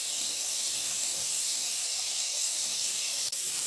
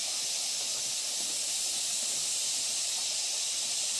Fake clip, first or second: first